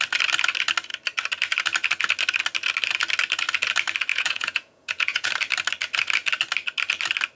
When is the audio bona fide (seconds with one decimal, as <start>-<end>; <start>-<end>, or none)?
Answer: 0.0-4.1; 5.3-7.4